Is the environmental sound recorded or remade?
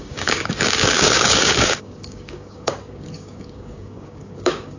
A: remade